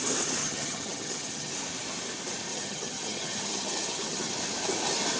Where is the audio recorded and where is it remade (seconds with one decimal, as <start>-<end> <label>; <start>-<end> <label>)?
0.0-0.4 recorded; 0.4-1.5 remade; 1.5-2.5 recorded; 2.5-4.3 remade; 4.3-5.2 recorded